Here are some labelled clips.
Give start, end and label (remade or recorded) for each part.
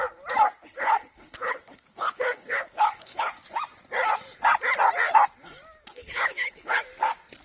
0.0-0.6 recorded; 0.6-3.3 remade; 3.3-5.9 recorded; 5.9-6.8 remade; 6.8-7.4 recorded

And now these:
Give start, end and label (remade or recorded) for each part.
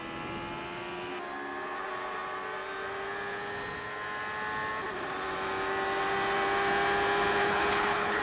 0.0-7.4 recorded; 7.4-8.2 remade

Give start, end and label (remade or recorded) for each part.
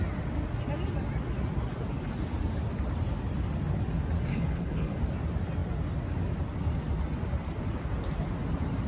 0.0-4.3 recorded; 4.3-5.0 remade; 5.0-8.9 recorded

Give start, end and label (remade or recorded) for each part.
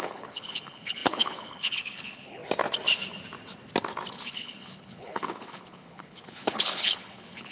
0.0-2.4 remade; 2.4-4.1 recorded; 4.1-7.5 remade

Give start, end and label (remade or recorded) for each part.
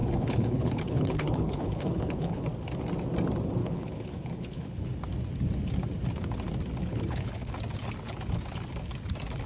0.0-2.4 remade; 2.4-3.6 recorded; 3.6-4.9 remade; 4.9-6.8 recorded; 6.8-7.5 remade; 7.5-9.5 recorded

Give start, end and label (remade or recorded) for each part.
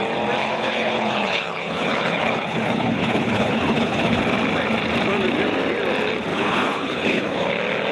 0.0-0.4 recorded; 0.4-4.2 remade; 4.2-6.3 recorded; 6.3-7.5 remade; 7.5-7.9 recorded